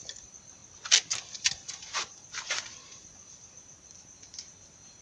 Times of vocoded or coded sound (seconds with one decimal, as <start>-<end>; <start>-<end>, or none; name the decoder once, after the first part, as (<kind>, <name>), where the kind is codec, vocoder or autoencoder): 0.0-0.6 (vocoder, BigVGAN v2); 1.2-5.0